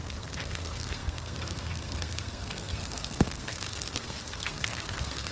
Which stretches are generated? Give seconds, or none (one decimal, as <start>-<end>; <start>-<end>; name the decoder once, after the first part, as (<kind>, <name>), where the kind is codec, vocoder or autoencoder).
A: 0.0-5.3 (codec, SNAC)